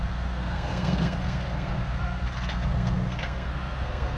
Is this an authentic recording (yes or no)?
no